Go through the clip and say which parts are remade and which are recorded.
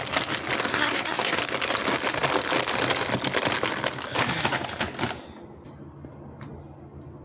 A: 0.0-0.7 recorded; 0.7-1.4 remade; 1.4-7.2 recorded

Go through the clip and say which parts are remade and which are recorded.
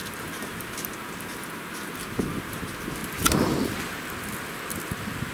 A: 0.0-5.3 recorded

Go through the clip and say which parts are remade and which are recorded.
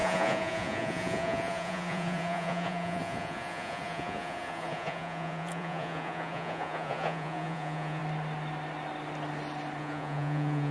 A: 0.0-8.0 remade; 8.0-9.8 recorded; 9.8-10.7 remade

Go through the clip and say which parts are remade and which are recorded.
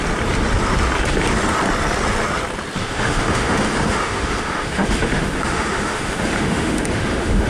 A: 0.0-2.8 recorded; 2.8-7.5 remade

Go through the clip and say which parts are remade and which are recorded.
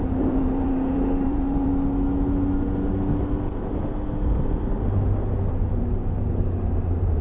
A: 0.0-1.7 remade; 1.7-5.5 recorded; 5.5-7.2 remade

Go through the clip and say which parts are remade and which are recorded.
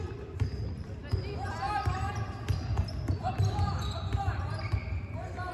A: 0.0-5.5 recorded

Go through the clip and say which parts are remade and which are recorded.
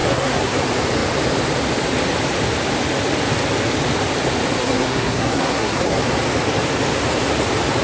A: 0.0-0.6 remade; 0.6-4.6 recorded; 4.6-6.0 remade; 6.0-7.8 recorded